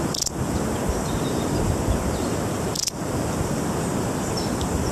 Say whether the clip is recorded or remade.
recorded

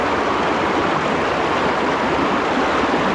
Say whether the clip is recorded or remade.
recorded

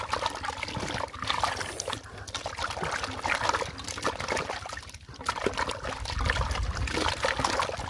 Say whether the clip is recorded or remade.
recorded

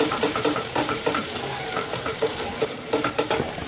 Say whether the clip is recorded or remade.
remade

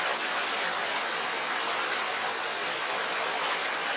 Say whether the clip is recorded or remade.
recorded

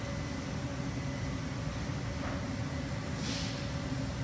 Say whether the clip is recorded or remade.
recorded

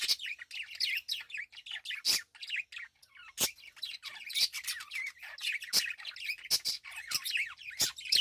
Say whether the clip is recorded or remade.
recorded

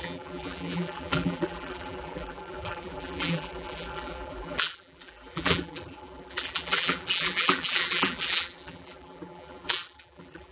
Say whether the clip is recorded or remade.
remade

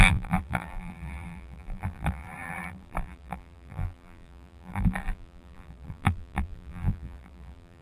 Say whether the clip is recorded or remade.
remade